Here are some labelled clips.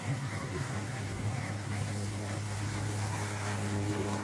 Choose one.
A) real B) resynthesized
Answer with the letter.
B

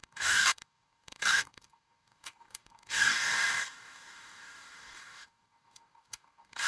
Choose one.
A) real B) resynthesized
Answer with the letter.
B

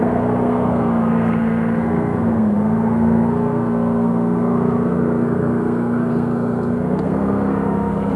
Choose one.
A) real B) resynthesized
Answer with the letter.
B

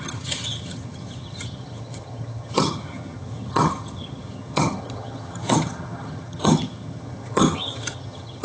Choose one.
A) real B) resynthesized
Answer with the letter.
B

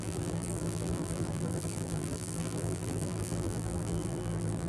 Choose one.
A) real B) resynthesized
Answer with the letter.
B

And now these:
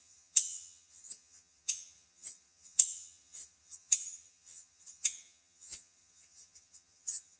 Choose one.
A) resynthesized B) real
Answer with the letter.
A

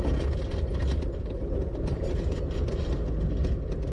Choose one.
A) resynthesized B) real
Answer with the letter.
B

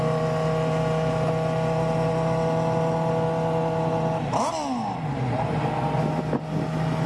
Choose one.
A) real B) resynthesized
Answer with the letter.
A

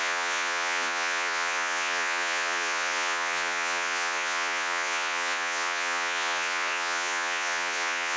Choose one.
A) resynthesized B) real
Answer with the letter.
A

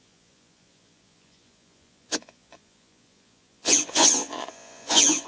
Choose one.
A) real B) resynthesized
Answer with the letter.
B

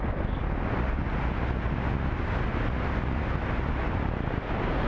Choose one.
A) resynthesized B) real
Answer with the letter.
B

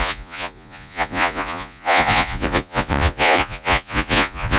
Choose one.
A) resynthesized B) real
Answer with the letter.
A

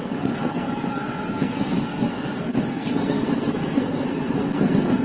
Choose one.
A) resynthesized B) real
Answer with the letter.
A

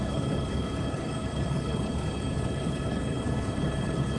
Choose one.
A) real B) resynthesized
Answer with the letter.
B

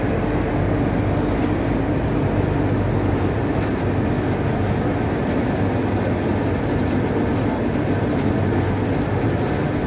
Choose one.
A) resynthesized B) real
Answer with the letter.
B